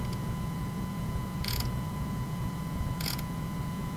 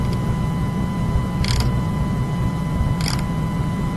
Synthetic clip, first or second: first